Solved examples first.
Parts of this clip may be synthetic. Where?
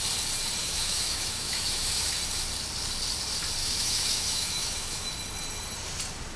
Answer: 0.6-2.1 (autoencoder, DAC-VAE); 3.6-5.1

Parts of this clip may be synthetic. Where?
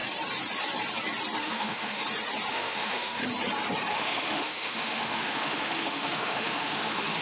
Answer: 1.4-2.0 (autoencoder, DAC-VAE); 2.5-3.2; 3.9-7.2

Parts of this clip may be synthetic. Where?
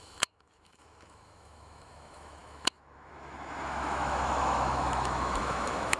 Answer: 0.0-6.0 (autoencoder, DAC-VAE)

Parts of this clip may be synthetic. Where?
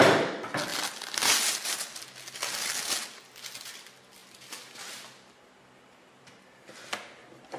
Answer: none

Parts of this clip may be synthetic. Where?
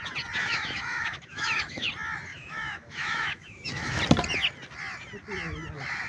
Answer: 0.4-1.9 (autoencoder, DAC-VAE); 2.3-4.0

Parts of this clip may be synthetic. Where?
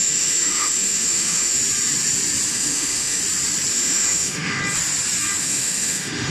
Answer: 0.0-1.6 (autoencoder, DAC-VAE); 2.5-3.2; 3.7-4.6; 5.4-6.3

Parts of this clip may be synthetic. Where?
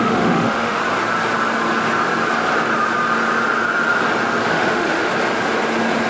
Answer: 0.0-0.8 (autoencoder, DAC-VAE); 4.5-5.1